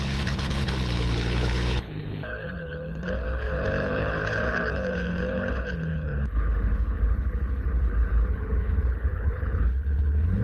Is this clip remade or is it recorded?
remade